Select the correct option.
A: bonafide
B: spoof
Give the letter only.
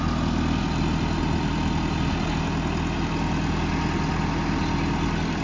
A